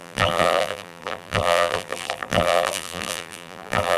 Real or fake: fake